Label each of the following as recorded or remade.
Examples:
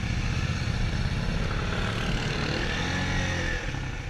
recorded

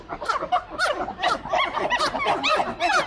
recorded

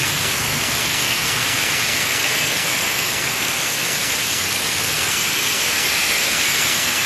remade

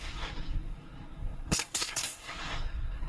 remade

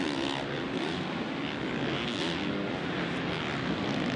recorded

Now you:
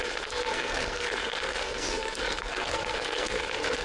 remade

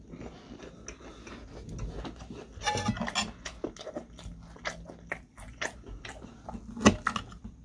recorded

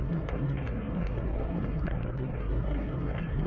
remade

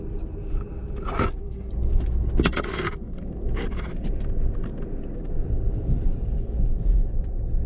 recorded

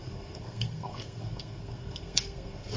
remade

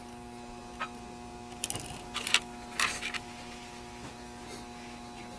recorded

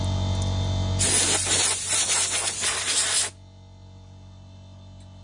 recorded